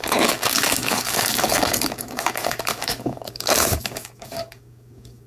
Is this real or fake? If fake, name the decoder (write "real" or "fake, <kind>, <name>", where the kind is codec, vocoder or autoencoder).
fake, codec, DAC